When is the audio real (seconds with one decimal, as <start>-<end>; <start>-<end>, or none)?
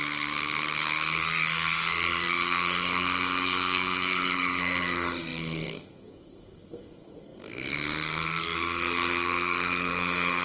none